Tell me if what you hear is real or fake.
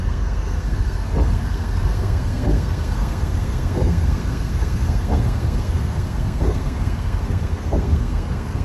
fake